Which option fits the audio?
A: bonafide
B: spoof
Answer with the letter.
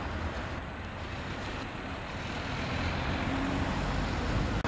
A